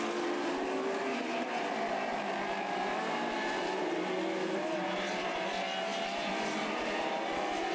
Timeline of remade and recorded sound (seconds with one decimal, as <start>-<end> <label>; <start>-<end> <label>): 0.0-7.7 remade